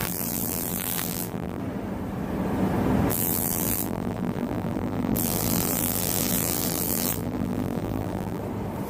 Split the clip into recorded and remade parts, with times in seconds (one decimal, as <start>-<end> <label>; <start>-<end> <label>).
0.0-1.6 remade; 1.6-3.1 recorded; 3.1-8.4 remade; 8.4-8.9 recorded